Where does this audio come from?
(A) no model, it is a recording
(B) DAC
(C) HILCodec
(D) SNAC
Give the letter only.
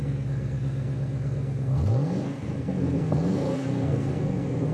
D